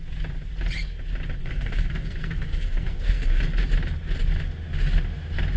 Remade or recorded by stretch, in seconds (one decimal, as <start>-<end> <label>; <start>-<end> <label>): 0.0-1.4 recorded; 1.4-3.4 remade; 3.4-5.6 recorded

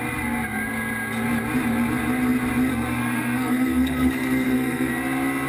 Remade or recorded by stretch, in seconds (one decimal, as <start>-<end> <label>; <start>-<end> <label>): 0.0-2.7 recorded; 2.7-4.9 remade; 4.9-5.5 recorded

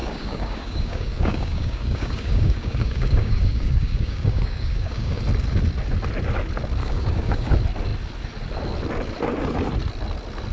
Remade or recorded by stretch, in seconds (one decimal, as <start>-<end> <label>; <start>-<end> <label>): 0.0-5.2 remade; 5.2-6.8 recorded; 6.8-7.5 remade; 7.5-10.5 recorded

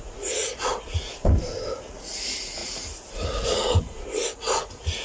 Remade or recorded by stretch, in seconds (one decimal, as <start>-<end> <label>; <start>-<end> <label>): 0.0-1.2 remade; 1.2-1.9 recorded; 1.9-5.0 remade

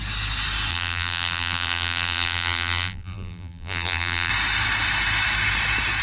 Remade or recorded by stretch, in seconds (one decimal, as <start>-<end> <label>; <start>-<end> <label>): 0.0-0.7 recorded; 0.7-4.3 remade; 4.3-6.0 recorded

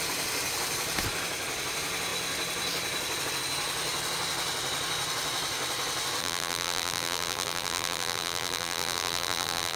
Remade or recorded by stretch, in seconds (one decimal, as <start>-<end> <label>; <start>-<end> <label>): 0.0-6.2 recorded; 6.2-9.8 remade